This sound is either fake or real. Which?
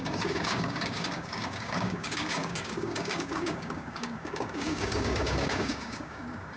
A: fake